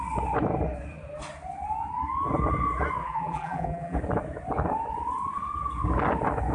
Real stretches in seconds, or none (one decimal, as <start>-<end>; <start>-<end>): 0.0-3.0; 4.0-6.5